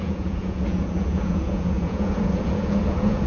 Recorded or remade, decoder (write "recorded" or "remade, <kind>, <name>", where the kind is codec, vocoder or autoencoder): remade, vocoder, Vocos